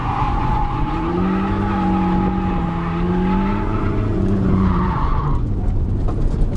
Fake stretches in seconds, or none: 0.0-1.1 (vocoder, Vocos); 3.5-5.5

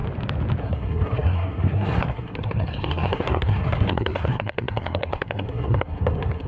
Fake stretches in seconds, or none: 0.6-6.5 (codec, SNAC)

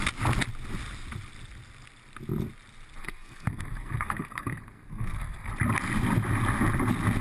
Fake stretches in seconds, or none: 3.0-5.5 (codec, SNAC)

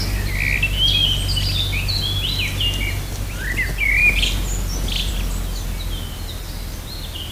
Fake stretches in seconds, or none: none